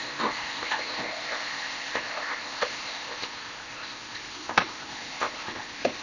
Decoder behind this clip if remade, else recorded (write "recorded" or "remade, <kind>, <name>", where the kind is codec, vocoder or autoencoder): remade, codec, ZipCodec